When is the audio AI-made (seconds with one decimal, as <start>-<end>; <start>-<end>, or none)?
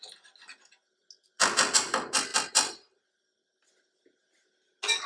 none